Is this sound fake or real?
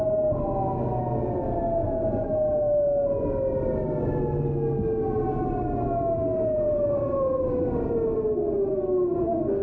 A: real